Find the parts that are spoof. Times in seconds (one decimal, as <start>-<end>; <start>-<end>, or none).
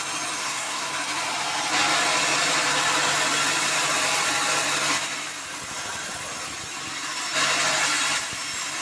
0.4-0.9